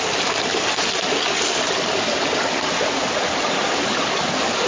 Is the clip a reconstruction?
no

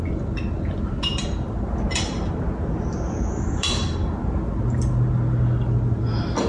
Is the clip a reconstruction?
no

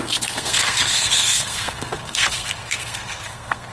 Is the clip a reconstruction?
yes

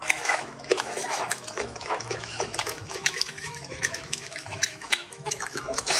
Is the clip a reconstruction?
yes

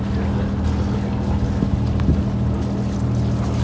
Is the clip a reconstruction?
no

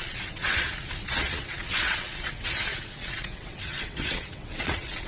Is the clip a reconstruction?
yes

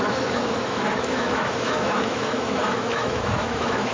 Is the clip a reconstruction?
yes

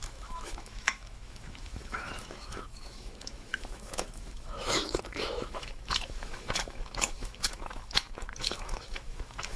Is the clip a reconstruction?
yes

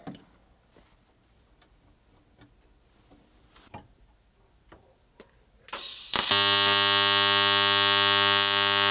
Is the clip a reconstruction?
no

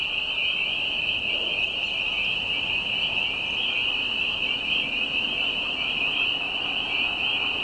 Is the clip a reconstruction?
no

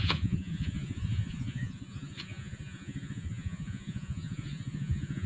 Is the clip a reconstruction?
yes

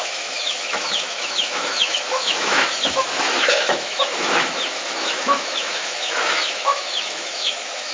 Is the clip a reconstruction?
yes